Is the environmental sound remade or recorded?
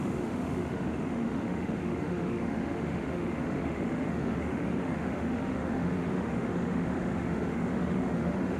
remade